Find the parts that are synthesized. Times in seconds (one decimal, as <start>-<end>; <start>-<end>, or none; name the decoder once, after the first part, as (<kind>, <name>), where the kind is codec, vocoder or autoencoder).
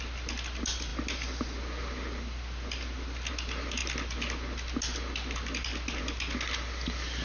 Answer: none